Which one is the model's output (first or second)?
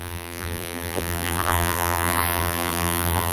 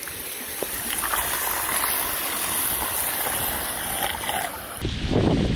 first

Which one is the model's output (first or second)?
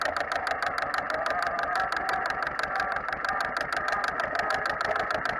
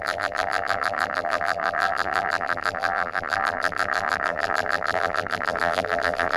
second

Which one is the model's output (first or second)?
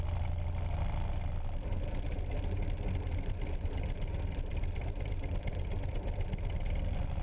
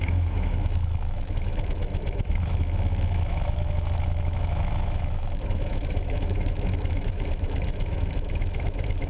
second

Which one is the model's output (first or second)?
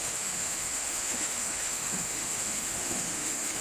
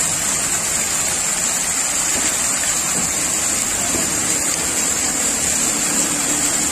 first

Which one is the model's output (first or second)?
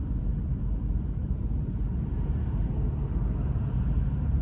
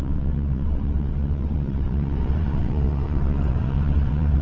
second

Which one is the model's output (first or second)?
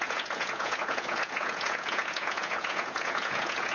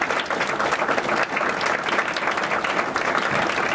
first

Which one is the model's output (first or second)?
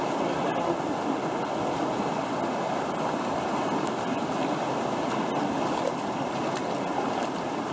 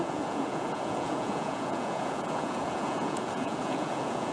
second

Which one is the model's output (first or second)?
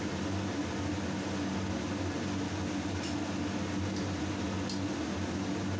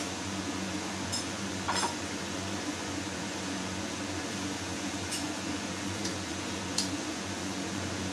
second